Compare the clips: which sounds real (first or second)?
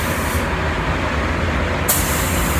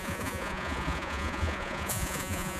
first